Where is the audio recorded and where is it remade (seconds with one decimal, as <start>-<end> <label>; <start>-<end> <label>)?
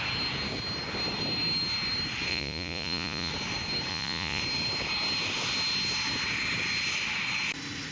0.0-2.3 recorded; 2.3-3.3 remade; 3.3-3.9 recorded; 3.9-4.4 remade; 4.4-7.9 recorded